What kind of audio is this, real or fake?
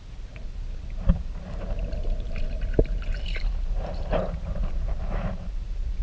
fake